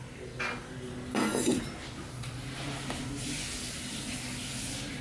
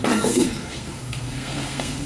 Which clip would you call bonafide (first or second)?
first